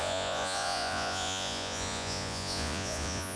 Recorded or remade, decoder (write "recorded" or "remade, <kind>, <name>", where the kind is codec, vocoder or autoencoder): remade, vocoder, Vocos